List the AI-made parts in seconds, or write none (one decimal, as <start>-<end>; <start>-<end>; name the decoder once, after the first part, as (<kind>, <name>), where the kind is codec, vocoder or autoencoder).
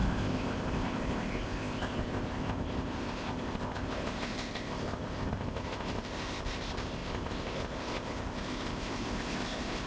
0.0-9.9 (codec, ZipCodec)